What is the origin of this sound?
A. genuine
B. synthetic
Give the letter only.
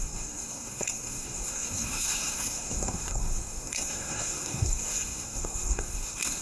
B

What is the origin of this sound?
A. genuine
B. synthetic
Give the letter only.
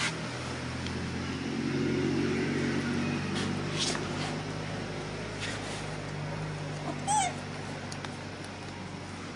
A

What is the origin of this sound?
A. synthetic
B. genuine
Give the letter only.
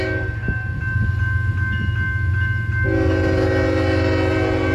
B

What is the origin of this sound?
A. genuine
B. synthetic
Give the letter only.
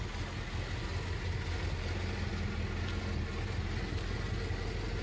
A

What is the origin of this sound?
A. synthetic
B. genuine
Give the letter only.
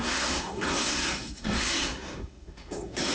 A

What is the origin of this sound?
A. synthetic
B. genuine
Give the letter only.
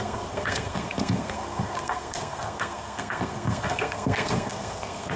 A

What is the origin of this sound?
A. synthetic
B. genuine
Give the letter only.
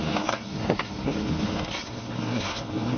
A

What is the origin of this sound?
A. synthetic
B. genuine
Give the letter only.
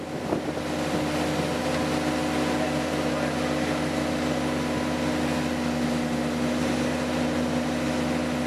B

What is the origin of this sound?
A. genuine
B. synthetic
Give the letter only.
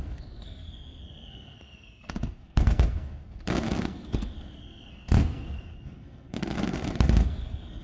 B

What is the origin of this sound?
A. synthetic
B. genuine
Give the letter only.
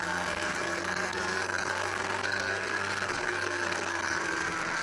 A